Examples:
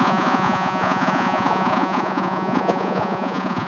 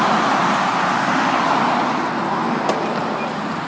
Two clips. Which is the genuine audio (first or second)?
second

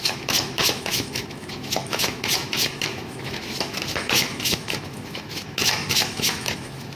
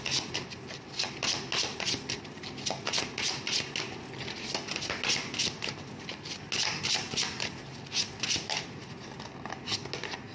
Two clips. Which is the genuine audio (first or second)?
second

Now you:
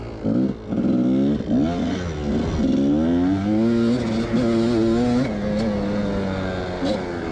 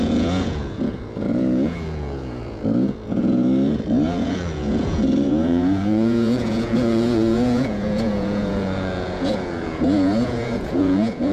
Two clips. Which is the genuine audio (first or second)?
first